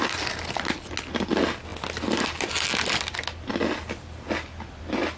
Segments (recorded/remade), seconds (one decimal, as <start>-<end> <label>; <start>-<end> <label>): 0.0-5.2 recorded